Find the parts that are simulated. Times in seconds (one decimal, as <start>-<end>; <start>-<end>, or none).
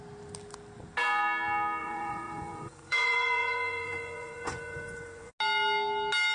1.8-5.3